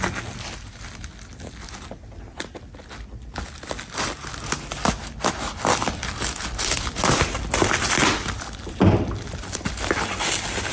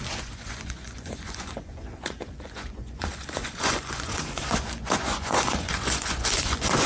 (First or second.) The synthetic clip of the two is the second